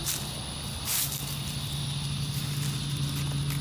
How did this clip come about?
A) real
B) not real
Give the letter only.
A